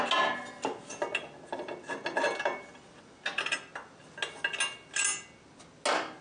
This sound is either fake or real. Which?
real